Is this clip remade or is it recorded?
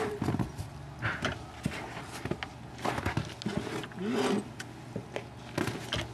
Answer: recorded